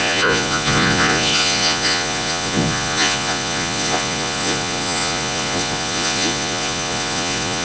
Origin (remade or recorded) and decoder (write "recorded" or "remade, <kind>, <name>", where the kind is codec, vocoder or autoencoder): remade, vocoder, Vocos